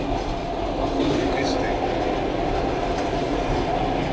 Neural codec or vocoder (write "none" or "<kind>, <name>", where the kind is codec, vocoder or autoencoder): none